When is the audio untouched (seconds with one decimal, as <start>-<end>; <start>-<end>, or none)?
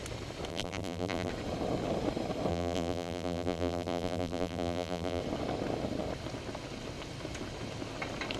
0.0-0.5; 1.3-2.5; 5.2-8.4